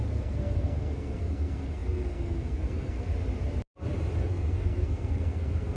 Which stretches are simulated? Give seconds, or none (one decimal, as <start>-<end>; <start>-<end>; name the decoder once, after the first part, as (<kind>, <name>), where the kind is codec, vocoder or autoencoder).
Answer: 0.0-3.1 (codec, SNAC); 4.2-5.8